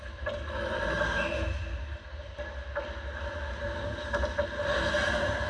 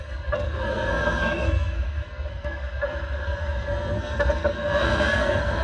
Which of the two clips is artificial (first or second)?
second